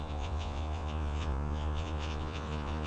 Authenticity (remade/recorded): remade